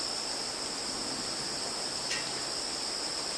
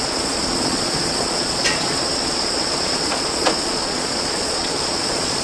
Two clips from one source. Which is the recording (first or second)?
first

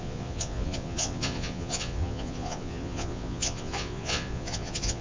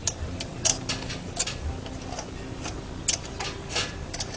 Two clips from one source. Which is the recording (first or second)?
second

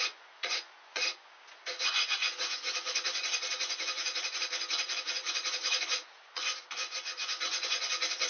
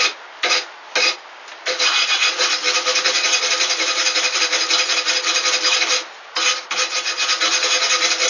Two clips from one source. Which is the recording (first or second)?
second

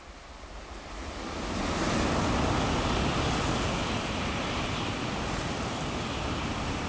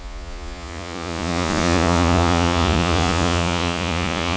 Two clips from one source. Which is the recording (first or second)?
first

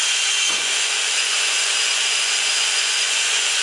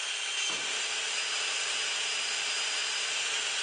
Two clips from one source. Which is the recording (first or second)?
second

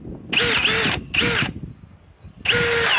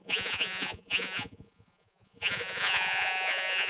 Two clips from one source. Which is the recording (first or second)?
first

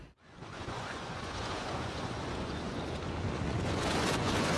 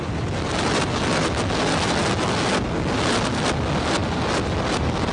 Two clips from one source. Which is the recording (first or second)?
second